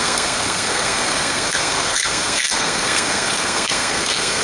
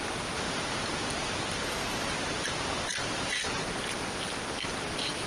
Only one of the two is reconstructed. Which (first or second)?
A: first